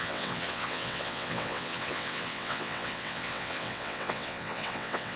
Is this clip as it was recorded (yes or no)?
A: no